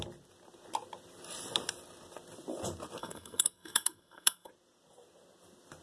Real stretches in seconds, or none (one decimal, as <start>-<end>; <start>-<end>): 0.0-3.0; 4.5-5.8

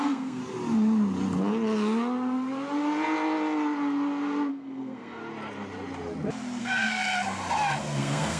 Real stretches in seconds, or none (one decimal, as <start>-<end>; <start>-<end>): 0.4-4.5; 5.2-6.6; 7.0-7.8